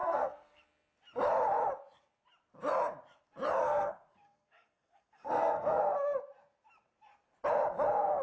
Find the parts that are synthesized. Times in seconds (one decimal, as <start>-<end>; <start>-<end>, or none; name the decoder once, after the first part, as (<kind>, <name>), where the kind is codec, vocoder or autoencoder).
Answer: 0.0-0.6 (codec, SNAC); 3.6-5.8